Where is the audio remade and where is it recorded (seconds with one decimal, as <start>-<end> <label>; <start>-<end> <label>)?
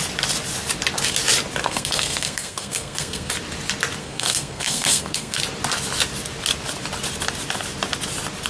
0.0-1.6 recorded; 1.6-3.3 remade; 3.3-4.0 recorded; 4.0-5.4 remade; 5.4-8.5 recorded